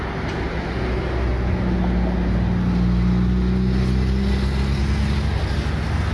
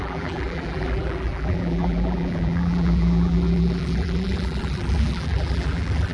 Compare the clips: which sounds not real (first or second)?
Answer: second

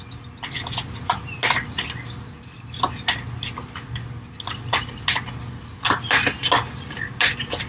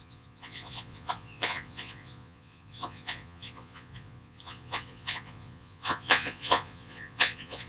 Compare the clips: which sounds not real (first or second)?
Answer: second